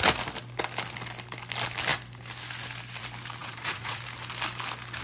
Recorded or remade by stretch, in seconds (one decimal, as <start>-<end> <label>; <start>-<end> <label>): 0.0-3.4 recorded; 3.4-4.0 remade; 4.0-5.0 recorded